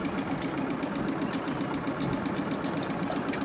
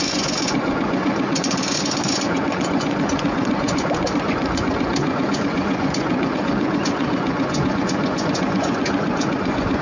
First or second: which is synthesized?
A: second